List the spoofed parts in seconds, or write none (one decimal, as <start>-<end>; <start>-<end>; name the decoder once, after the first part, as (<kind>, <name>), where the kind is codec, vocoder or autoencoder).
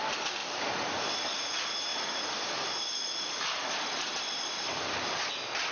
0.4-1.1 (vocoder, BigVGAN v2); 1.9-5.3